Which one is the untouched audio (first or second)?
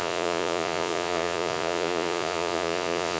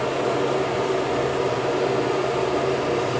second